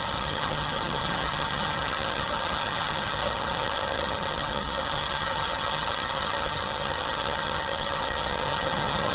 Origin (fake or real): fake